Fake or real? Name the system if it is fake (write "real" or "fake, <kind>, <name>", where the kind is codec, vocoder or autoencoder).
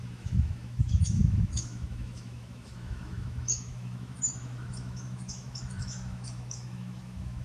fake, autoencoder, DAC-VAE